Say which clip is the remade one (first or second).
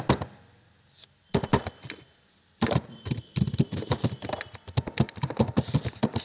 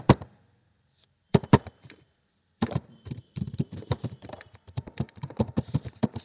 second